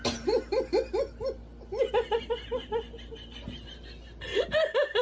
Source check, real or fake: real